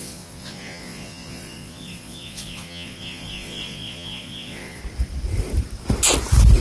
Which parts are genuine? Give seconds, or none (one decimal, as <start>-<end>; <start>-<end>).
4.8-6.6